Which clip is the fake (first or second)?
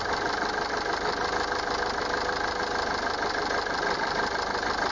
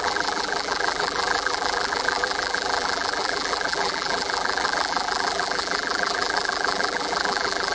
second